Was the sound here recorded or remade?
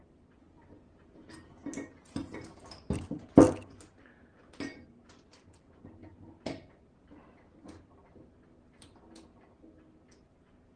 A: recorded